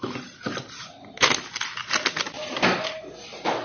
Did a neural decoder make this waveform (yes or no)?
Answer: no